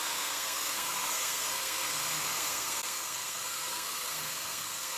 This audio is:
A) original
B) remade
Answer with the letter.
B